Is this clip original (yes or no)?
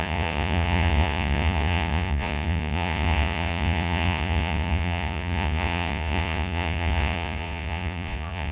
no